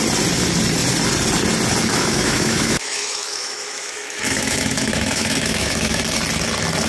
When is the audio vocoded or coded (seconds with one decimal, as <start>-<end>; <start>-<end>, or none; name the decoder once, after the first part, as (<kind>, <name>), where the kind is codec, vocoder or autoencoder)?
1.9-6.0 (autoencoder, DAC-VAE)